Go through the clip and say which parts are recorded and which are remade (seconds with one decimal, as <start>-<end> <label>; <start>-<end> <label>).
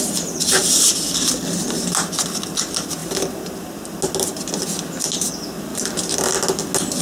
0.0-5.7 recorded; 5.7-6.3 remade; 6.3-7.0 recorded